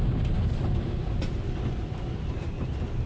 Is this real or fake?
real